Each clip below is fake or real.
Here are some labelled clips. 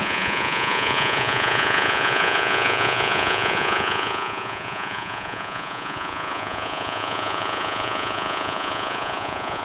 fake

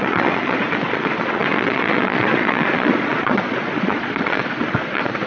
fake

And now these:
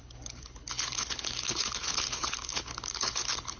fake